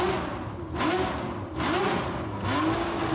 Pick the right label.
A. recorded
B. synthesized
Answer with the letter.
A